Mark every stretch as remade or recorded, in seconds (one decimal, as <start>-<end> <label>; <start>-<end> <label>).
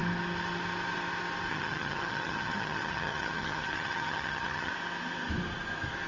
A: 0.0-1.5 recorded; 1.5-4.7 remade; 4.7-6.1 recorded